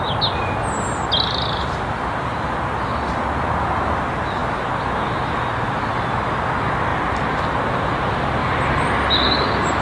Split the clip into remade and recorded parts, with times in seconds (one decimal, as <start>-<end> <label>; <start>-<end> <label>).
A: 0.0-8.4 recorded; 8.4-8.9 remade; 8.9-9.8 recorded